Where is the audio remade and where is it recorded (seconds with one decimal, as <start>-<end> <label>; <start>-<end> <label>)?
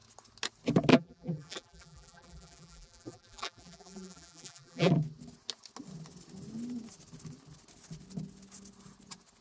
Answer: 0.0-0.9 recorded; 0.9-4.9 remade; 4.9-9.4 recorded